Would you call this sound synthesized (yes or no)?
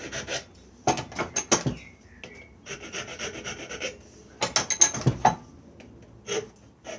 no